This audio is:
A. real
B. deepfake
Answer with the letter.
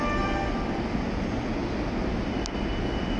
A